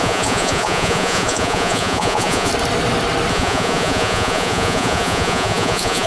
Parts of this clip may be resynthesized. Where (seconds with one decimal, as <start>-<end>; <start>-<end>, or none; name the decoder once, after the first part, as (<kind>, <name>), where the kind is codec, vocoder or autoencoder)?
0.0-2.5 (vocoder, Vocos); 3.3-6.1

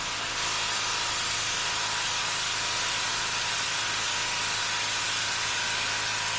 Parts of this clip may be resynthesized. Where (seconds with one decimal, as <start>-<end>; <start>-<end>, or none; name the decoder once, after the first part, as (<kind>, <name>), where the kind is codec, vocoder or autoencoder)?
none

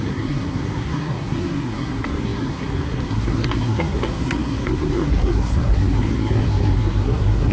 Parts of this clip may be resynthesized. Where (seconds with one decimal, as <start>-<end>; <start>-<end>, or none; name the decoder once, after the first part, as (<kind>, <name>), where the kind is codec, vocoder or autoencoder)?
0.0-7.5 (codec, SNAC)

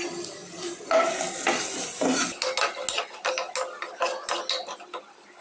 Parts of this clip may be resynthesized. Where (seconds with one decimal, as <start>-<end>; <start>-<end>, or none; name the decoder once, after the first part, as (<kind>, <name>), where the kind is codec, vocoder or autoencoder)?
0.4-1.2 (vocoder, BigVGAN v2)

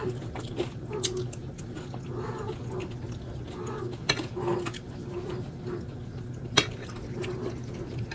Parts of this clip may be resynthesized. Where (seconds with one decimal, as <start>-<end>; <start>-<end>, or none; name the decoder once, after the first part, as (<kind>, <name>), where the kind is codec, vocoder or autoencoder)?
none

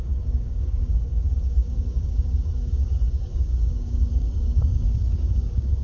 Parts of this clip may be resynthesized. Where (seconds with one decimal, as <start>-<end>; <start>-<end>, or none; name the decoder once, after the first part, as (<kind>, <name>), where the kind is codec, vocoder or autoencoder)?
0.0-5.8 (codec, DAC)

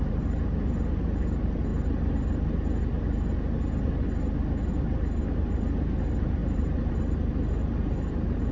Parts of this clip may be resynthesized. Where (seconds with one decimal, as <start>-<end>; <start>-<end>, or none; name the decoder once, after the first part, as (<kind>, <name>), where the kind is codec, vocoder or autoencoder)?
0.0-1.7 (vocoder, BigVGAN v2); 5.3-8.5